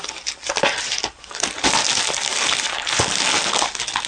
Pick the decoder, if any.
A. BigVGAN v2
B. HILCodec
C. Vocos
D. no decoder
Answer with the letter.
D